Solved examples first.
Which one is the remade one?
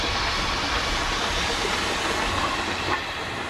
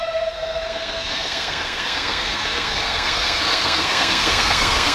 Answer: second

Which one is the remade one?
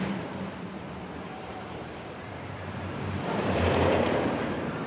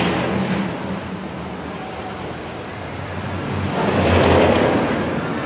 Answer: first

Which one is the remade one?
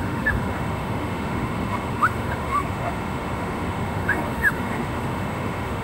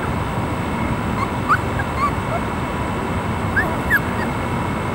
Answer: first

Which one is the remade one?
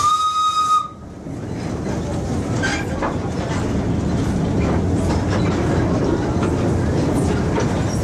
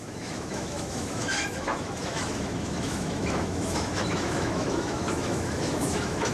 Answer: second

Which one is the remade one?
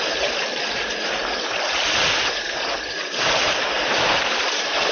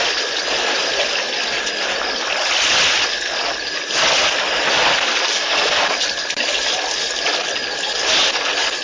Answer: first